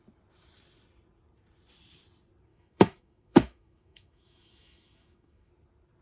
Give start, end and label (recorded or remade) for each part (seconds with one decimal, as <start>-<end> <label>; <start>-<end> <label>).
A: 0.0-2.5 recorded; 2.5-5.5 remade; 5.5-6.0 recorded